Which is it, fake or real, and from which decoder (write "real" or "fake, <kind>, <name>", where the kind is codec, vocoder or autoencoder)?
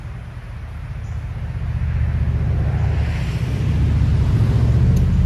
real